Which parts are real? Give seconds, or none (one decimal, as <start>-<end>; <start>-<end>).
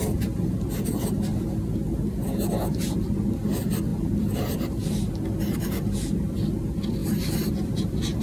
0.0-3.9; 5.1-7.0